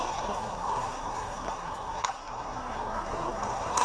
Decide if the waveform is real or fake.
fake